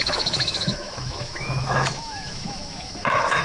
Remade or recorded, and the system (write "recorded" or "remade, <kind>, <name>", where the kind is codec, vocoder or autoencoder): remade, autoencoder, DAC-VAE